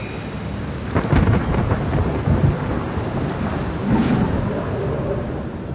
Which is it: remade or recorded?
recorded